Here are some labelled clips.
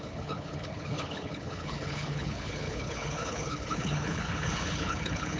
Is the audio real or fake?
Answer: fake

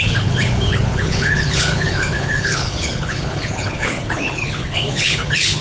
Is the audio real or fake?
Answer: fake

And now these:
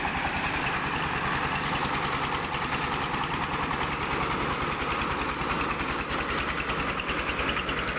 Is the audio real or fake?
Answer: real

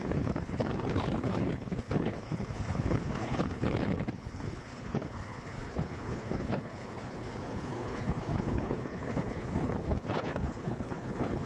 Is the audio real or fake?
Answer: fake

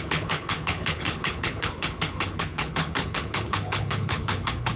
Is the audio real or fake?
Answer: fake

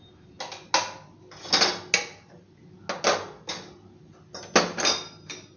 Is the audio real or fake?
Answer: real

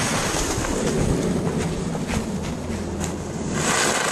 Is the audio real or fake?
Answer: real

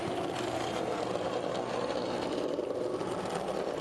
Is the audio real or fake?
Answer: real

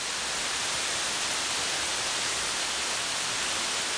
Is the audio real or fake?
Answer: real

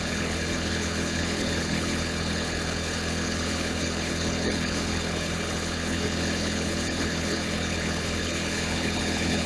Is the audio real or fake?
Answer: fake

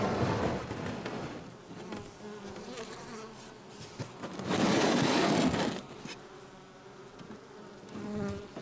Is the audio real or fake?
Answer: real